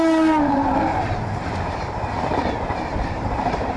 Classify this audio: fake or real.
fake